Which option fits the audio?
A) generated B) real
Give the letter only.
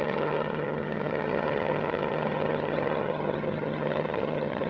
A